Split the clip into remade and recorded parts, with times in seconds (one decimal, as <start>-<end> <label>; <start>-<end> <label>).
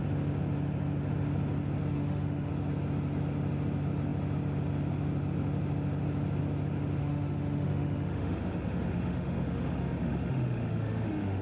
0.0-1.9 recorded; 1.9-2.5 remade; 2.5-7.0 recorded; 7.0-11.4 remade